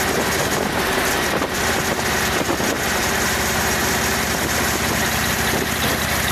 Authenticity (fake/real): fake